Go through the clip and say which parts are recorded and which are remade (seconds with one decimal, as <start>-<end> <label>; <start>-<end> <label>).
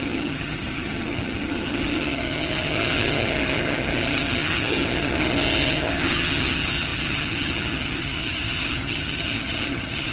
0.0-10.1 remade